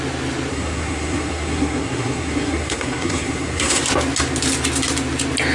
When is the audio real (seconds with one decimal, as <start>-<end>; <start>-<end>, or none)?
0.0-0.5; 3.8-5.5